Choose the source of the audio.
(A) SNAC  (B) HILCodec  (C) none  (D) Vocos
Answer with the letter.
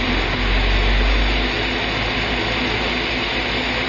C